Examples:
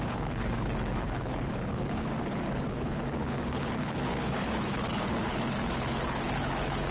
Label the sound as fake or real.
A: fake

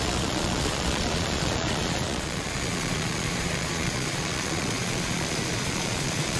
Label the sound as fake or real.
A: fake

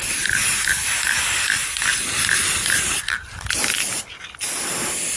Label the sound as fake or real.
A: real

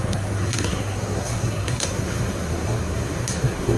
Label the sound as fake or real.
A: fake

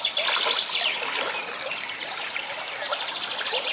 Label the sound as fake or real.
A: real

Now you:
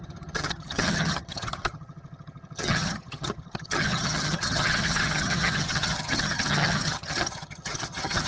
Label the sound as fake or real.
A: fake